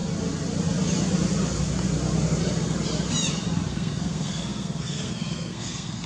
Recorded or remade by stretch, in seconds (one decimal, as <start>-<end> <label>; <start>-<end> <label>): 0.0-3.7 recorded; 3.7-6.1 remade